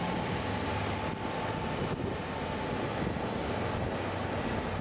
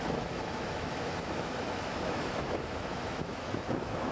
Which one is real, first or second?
first